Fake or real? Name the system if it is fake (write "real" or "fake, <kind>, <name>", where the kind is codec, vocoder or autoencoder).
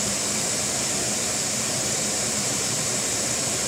fake, vocoder, BigVGAN v2